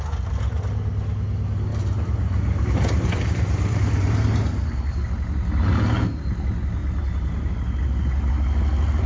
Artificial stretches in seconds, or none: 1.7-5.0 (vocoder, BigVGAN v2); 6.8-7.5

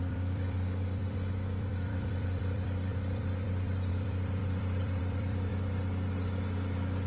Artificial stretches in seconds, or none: 0.0-5.5 (vocoder, BigVGAN v2)